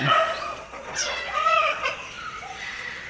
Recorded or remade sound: remade